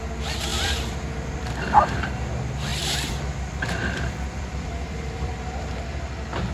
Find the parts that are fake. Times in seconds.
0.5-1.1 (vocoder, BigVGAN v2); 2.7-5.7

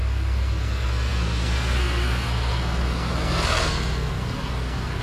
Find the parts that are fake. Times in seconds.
0.0-5.0 (codec, SNAC)

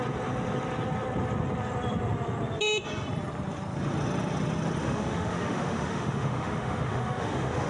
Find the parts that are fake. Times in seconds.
4.8-7.7 (autoencoder, DAC-VAE)

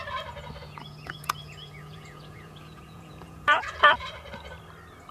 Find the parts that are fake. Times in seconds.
0.6-3.7 (vocoder, Vocos)

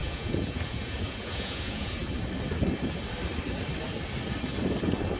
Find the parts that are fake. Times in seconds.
0.0-2.0 (vocoder, Vocos)

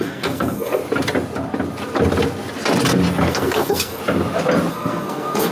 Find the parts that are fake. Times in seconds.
0.0-0.8 (codec, SNAC); 3.3-4.0; 4.7-5.5

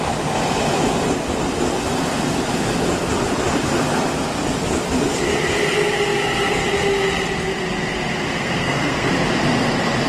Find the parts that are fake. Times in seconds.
8.3-9.1 (codec, SNAC)